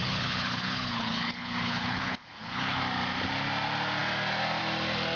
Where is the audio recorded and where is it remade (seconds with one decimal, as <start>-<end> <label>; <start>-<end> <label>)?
0.0-2.8 remade; 2.8-5.2 recorded